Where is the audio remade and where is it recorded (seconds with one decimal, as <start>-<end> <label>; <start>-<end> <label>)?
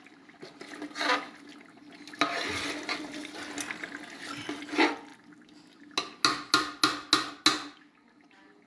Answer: 0.0-8.7 recorded